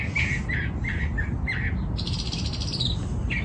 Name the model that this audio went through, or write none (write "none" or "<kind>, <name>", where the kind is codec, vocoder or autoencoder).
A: none